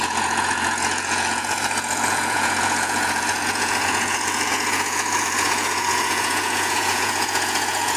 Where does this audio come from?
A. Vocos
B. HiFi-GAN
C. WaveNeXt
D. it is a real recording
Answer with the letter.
A